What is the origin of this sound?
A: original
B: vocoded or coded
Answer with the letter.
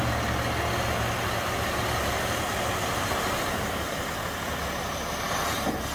A